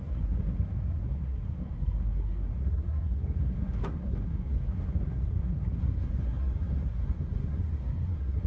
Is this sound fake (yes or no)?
yes